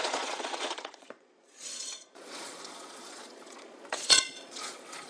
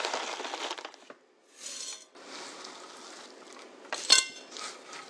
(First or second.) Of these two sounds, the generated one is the first